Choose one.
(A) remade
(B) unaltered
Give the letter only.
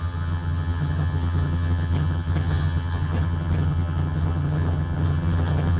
A